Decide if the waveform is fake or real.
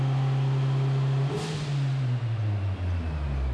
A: real